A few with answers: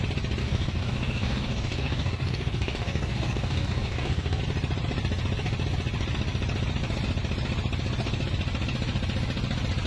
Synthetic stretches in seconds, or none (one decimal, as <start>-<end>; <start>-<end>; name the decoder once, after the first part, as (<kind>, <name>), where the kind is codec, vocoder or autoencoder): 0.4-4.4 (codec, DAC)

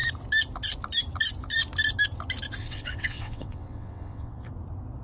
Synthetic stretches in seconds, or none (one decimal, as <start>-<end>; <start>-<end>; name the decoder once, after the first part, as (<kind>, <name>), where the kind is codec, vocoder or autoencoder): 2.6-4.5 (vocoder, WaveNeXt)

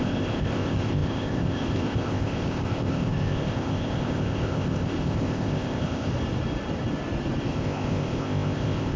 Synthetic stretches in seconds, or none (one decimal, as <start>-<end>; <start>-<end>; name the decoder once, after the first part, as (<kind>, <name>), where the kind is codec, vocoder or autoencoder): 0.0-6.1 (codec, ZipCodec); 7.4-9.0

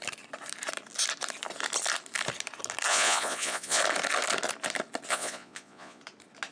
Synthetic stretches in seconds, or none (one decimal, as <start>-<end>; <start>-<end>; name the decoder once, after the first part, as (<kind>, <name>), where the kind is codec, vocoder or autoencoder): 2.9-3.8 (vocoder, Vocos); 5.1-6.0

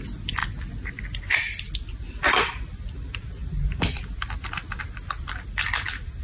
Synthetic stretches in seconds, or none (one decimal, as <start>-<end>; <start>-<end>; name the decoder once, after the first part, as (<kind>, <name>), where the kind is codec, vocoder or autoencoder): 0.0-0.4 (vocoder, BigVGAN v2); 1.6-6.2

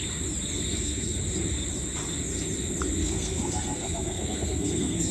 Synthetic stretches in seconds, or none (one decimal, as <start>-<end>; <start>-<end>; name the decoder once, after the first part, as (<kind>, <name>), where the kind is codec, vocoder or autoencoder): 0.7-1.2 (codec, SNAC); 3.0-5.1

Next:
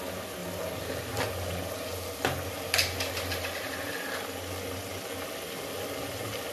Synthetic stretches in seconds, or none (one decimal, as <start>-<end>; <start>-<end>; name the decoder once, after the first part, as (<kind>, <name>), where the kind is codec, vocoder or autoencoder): none